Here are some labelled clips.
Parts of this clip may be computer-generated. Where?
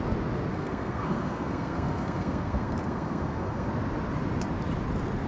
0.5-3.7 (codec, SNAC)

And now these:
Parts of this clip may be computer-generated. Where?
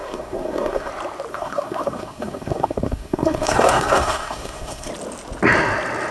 0.0-0.9 (codec, SNAC); 1.3-4.9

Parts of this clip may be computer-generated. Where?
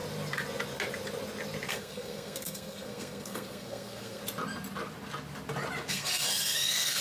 1.7-4.2 (codec, SNAC); 5.9-7.0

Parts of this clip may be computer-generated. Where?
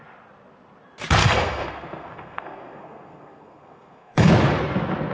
1.2-4.3 (codec, SNAC)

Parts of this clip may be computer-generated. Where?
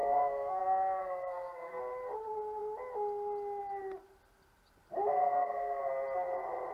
0.0-0.6 (codec, SNAC); 1.0-1.8; 5.2-5.8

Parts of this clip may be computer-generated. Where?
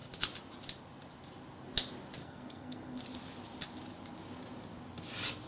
2.2-3.0 (codec, SNAC)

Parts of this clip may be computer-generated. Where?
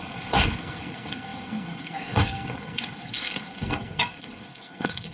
0.0-5.1 (codec, SNAC)